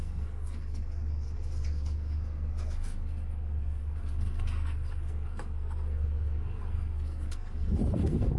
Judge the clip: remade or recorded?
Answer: remade